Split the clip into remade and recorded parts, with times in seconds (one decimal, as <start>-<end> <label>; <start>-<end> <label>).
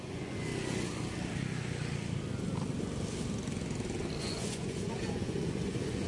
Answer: 0.0-0.5 remade; 0.5-4.2 recorded; 4.2-6.1 remade